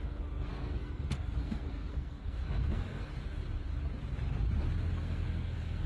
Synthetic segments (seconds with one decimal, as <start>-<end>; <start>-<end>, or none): 0.0-3.1; 4.9-5.9